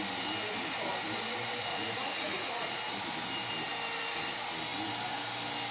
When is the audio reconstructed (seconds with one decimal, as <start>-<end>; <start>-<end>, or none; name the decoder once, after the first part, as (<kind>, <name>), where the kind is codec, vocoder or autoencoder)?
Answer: 1.7-2.8 (vocoder, Vocos)